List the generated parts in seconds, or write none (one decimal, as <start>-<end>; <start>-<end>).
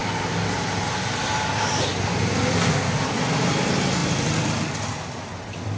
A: none